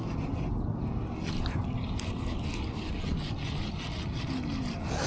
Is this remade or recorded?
recorded